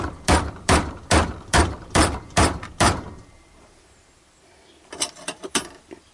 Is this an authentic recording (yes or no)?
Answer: no